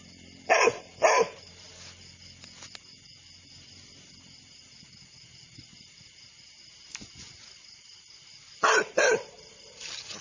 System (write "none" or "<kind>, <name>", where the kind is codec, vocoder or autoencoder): none